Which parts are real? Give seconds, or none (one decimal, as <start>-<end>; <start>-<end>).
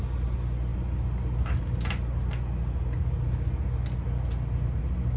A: 0.0-5.2